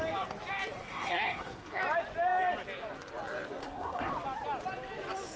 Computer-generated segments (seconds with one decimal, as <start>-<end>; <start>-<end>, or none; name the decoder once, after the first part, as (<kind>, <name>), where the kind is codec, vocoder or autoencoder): 0.8-1.8 (codec, SNAC); 3.6-4.1